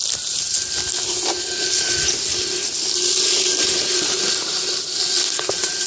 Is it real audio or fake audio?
real